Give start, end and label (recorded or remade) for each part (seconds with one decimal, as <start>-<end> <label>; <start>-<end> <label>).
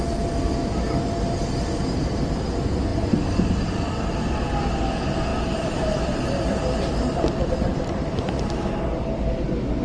0.0-2.9 recorded; 2.9-4.3 remade; 4.3-5.3 recorded; 5.3-8.5 remade; 8.5-9.8 recorded